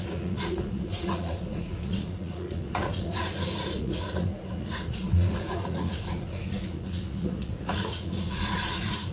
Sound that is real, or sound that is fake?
fake